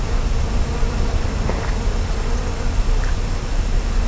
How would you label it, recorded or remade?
recorded